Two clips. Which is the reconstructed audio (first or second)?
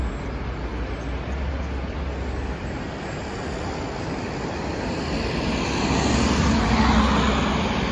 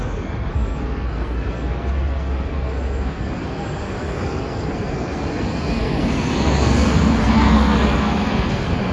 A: second